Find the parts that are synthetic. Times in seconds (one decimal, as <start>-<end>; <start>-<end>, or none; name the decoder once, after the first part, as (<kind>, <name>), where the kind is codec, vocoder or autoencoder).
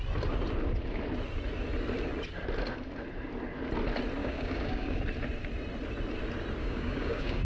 4.2-5.0 (codec, DAC); 6.6-7.4